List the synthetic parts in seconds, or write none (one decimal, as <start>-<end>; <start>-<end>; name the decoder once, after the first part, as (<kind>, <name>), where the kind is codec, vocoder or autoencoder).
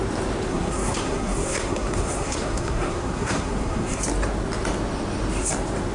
0.5-4.0 (codec, SNAC)